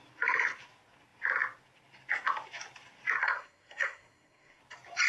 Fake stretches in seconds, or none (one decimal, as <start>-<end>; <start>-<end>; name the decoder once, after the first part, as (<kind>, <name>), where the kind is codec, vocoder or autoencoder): 3.2-4.6 (codec, SNAC)